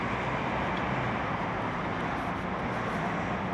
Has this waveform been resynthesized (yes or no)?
no